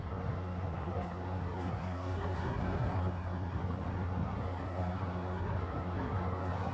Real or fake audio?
fake